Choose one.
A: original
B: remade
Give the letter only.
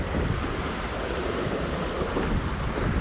A